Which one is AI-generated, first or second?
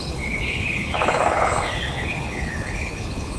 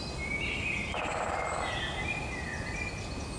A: first